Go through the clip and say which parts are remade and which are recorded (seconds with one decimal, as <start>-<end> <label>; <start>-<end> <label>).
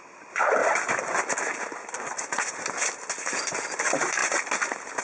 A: 0.0-5.0 recorded